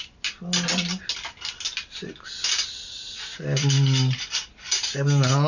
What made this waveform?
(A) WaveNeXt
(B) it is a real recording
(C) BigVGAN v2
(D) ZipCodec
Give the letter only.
B